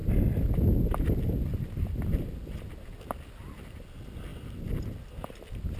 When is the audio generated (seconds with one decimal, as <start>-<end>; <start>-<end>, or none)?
none